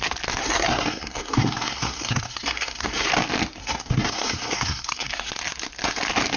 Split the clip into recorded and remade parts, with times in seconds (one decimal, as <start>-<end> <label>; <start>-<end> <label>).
0.0-0.4 recorded; 0.4-3.1 remade; 3.1-3.6 recorded; 3.6-5.3 remade; 5.3-6.4 recorded